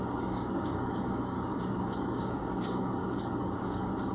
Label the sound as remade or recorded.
remade